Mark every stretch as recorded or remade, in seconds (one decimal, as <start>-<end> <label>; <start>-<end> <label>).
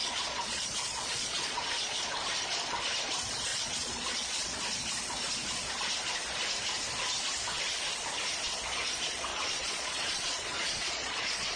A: 0.0-2.1 remade; 2.1-3.5 recorded; 3.5-4.6 remade; 4.6-9.3 recorded; 9.3-11.6 remade